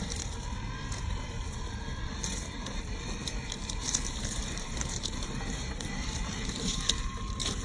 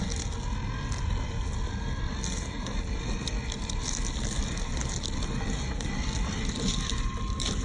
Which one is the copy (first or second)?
first